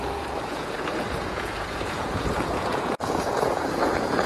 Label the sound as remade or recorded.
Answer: remade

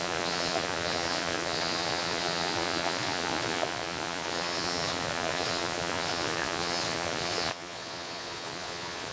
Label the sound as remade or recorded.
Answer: remade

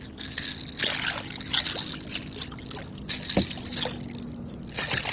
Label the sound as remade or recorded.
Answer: recorded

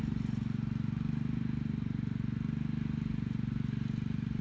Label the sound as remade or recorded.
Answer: recorded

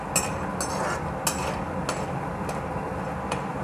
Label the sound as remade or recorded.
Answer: recorded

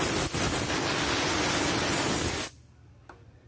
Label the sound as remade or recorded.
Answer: recorded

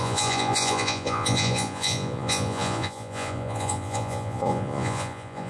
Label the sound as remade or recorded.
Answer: remade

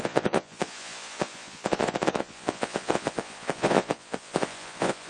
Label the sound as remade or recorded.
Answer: remade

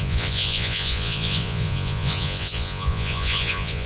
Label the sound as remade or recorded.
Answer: remade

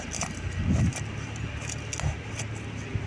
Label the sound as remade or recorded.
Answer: recorded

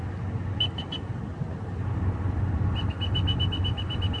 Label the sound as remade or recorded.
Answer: recorded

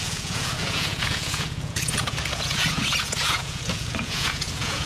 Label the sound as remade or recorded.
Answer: remade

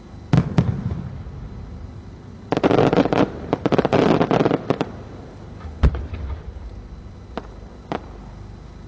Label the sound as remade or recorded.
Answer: recorded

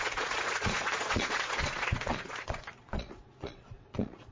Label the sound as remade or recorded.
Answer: remade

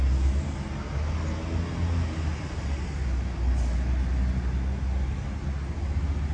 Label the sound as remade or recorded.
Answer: recorded